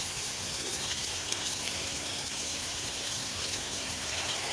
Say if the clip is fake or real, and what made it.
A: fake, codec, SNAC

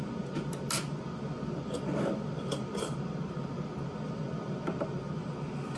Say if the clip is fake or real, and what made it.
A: real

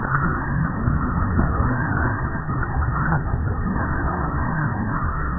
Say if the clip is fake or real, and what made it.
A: fake, codec, SNAC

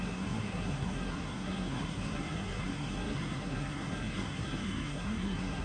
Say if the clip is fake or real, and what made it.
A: fake, codec, SNAC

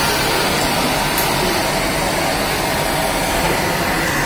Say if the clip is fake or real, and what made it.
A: real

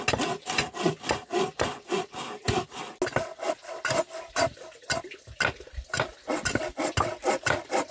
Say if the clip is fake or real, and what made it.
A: real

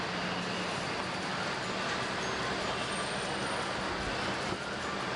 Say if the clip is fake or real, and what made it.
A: real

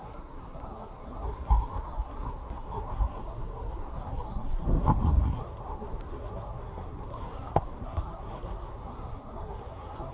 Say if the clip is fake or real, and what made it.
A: fake, codec, SNAC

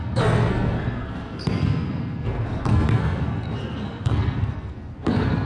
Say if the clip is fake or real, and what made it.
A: fake, codec, SNAC